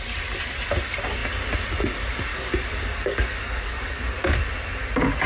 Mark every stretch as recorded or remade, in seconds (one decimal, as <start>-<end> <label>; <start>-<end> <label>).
0.0-2.3 recorded; 2.3-4.0 remade; 4.0-5.3 recorded

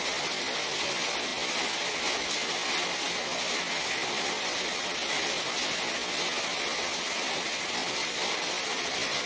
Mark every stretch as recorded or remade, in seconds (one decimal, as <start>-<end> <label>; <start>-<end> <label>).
0.0-7.8 recorded; 7.8-8.9 remade; 8.9-9.3 recorded

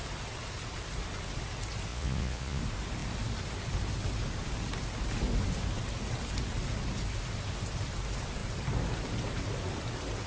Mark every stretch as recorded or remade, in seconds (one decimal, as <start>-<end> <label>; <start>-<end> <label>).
0.0-1.9 recorded; 1.9-2.6 remade; 2.6-10.3 recorded